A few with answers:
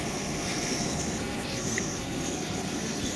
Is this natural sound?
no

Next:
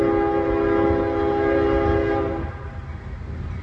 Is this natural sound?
yes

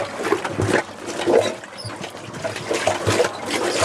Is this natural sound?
yes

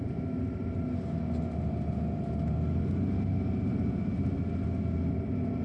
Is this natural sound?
yes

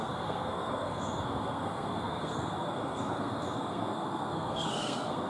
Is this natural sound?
no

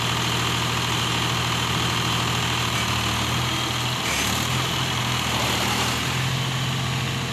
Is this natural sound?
yes